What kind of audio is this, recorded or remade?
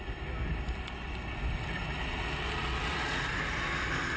recorded